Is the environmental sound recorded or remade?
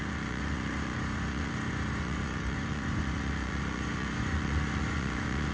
remade